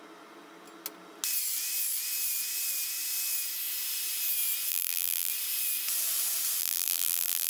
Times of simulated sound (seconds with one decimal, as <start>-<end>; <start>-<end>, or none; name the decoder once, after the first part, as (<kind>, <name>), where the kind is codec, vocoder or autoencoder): 4.7-5.3 (vocoder, BigVGAN v2); 6.6-7.5